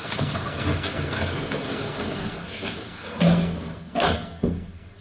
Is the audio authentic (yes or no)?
no